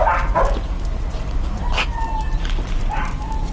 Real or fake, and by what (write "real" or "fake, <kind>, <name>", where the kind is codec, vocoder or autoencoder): real